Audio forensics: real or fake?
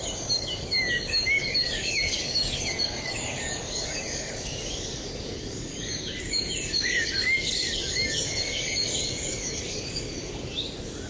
fake